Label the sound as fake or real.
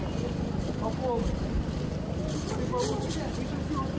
real